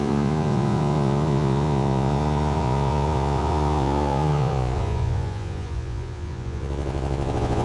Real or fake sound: fake